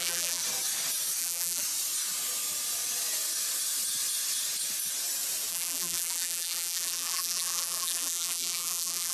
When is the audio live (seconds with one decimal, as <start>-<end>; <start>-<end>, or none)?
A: 0.4-1.2; 1.6-5.5